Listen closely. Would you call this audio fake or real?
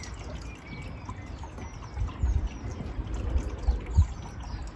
real